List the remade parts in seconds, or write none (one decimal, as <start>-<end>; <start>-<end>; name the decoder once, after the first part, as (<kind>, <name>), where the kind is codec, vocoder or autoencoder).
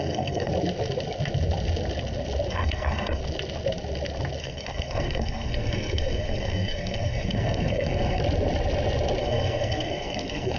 0.0-0.5 (codec, SNAC); 2.5-3.2; 4.4-8.2; 9.2-10.6